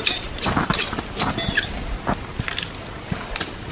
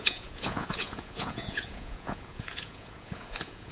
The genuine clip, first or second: first